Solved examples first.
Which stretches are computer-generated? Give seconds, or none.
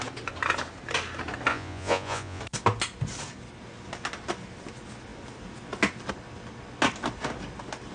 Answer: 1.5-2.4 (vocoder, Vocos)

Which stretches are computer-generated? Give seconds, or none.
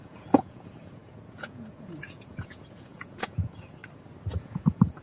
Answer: 0.0-3.8 (vocoder, Vocos); 4.4-5.0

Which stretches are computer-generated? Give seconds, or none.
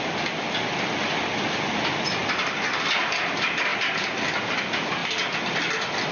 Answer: none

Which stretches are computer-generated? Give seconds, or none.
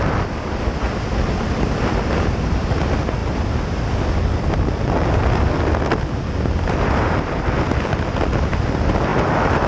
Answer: none